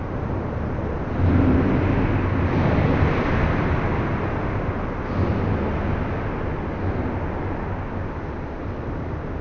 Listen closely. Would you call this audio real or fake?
real